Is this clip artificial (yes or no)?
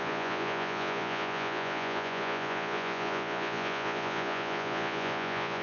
yes